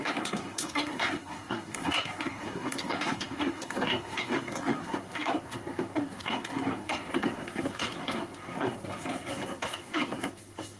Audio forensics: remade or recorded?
remade